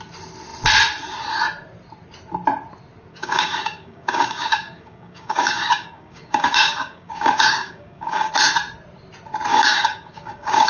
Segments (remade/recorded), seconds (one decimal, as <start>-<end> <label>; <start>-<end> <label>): 0.0-3.1 recorded; 3.1-8.3 remade; 8.3-9.5 recorded; 9.5-10.7 remade